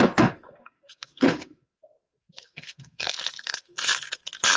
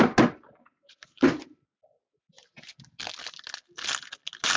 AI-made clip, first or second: first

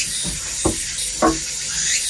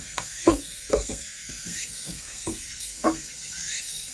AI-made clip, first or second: second